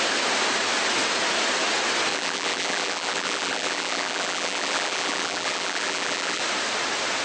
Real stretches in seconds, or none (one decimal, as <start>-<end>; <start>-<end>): 0.0-2.1; 6.4-7.2